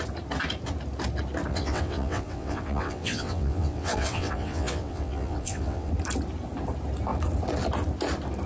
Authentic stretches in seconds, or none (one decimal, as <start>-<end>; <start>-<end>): 0.0-1.5; 5.9-8.5